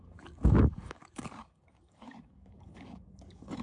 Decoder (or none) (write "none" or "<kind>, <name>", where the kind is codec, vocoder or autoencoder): codec, DAC